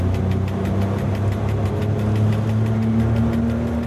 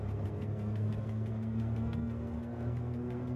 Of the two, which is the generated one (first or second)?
second